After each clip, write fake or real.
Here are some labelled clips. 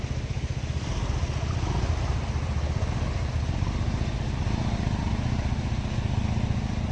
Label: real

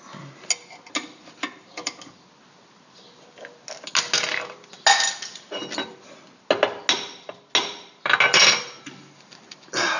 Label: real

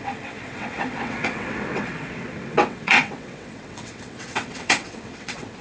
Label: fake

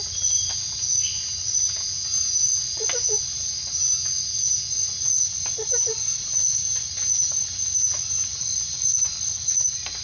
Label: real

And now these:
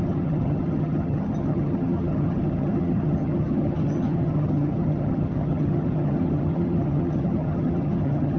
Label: fake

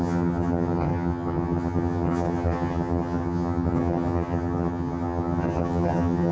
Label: fake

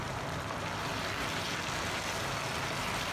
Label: real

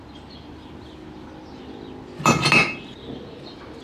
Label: real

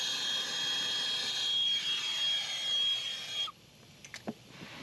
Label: real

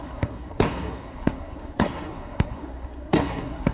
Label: fake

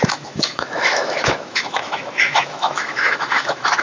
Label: fake